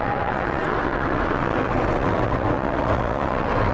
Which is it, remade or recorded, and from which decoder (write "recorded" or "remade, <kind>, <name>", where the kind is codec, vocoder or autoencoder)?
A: remade, vocoder, WaveNeXt